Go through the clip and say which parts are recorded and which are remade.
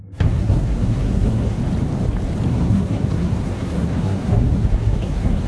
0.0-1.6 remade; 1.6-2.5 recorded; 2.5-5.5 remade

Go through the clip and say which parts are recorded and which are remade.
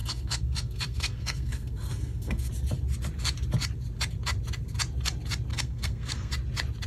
0.0-2.5 remade; 2.5-5.5 recorded; 5.5-6.3 remade; 6.3-6.9 recorded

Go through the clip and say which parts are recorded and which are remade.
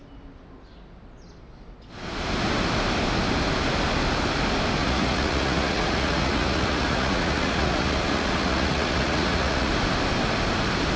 0.0-4.8 recorded; 4.8-9.7 remade; 9.7-11.0 recorded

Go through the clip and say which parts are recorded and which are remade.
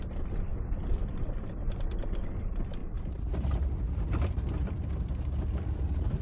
0.0-2.8 recorded; 2.8-6.2 remade